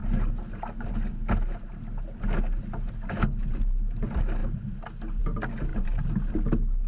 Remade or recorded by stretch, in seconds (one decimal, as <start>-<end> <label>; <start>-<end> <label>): 0.0-6.9 recorded